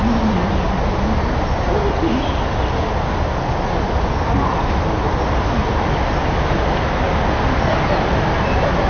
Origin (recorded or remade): recorded